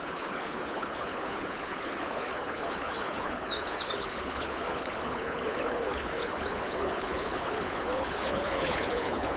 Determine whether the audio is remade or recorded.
remade